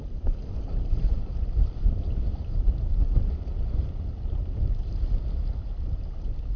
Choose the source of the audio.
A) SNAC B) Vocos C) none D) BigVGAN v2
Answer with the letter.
C